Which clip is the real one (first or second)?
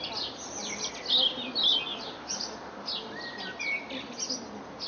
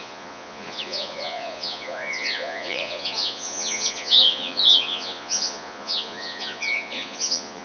first